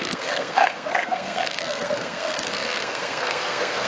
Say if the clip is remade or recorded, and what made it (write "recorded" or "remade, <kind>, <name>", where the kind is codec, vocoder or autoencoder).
remade, codec, SNAC